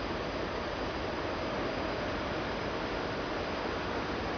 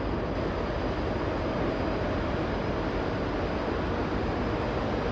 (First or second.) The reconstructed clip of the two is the first